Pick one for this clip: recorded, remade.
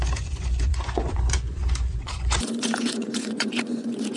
remade